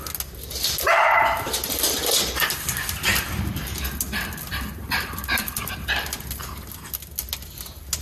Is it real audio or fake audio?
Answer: real